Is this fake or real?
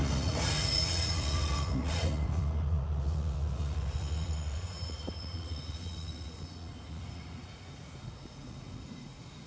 fake